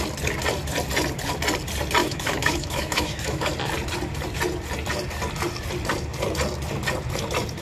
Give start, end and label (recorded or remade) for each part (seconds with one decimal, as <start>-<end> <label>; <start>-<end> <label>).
0.0-2.0 recorded; 2.0-3.5 remade; 3.5-7.6 recorded

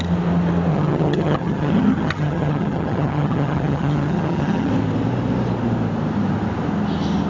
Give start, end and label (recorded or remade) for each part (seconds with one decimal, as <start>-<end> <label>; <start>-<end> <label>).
0.0-0.7 recorded; 0.7-4.7 remade; 4.7-7.3 recorded